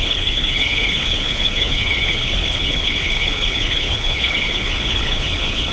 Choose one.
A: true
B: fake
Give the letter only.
B